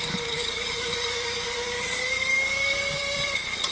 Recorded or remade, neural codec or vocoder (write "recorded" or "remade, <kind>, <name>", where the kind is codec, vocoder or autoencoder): remade, codec, DAC